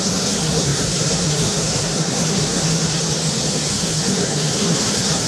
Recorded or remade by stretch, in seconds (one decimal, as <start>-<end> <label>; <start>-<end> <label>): 0.0-3.0 remade; 3.0-3.7 recorded; 3.7-5.3 remade